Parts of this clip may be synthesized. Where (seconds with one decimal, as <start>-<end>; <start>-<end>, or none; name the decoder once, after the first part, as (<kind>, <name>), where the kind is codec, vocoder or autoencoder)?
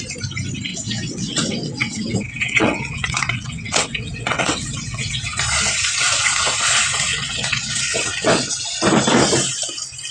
0.7-5.4 (vocoder, WaveNeXt); 7.1-8.5